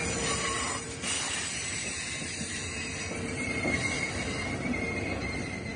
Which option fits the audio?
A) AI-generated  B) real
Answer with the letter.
B